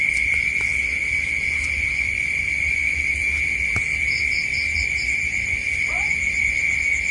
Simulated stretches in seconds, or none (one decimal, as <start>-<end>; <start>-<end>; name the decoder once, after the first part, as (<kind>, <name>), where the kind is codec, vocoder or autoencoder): 0.0-0.8 (vocoder, Vocos); 1.7-3.2; 4.3-7.1